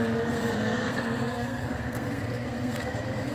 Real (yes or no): no